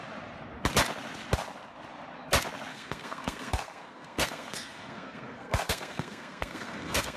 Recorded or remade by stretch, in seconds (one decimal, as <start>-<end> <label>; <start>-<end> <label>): 0.0-2.7 recorded; 2.7-7.2 remade

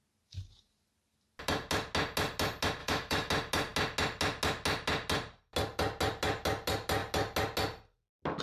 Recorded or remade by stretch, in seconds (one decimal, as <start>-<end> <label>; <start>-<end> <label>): 0.0-2.8 recorded; 2.8-3.3 remade; 3.3-8.4 recorded

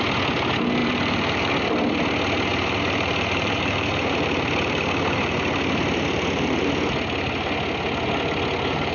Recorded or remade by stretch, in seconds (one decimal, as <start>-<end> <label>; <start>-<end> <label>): 0.0-0.8 recorded; 0.8-1.5 remade; 1.5-2.5 recorded; 2.5-6.7 remade; 6.7-8.9 recorded

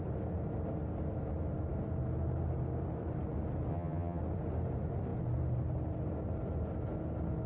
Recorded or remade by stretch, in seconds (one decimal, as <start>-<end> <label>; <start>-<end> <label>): 0.0-3.7 recorded; 3.7-4.2 remade; 4.2-7.5 recorded

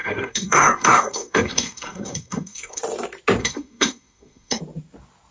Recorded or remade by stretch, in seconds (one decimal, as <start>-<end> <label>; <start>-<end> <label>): 0.0-2.8 remade; 2.8-3.4 recorded; 3.4-4.6 remade; 4.6-5.3 recorded